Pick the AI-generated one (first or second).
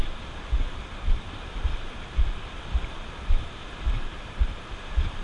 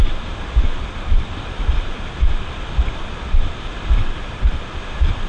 first